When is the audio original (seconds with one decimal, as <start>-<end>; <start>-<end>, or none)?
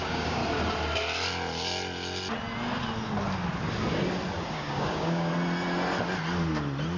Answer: 0.4-4.5; 5.3-7.0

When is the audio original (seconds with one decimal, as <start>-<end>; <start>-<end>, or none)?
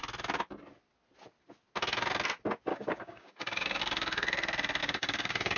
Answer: 0.0-2.7; 3.8-4.8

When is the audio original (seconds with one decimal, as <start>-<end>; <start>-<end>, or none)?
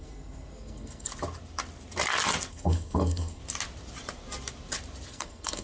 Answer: 1.1-2.5; 3.4-5.1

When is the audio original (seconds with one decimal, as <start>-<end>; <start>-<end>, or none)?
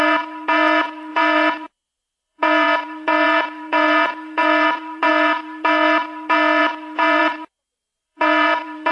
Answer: none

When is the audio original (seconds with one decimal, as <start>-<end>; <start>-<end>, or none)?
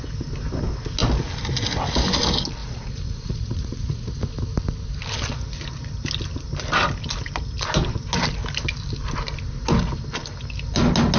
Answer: 0.0-2.6; 4.2-11.2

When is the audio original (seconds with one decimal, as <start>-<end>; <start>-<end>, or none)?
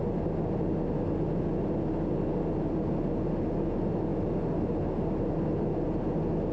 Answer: 0.0-6.5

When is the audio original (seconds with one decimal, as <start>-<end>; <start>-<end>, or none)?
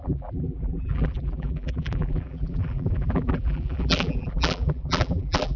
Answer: none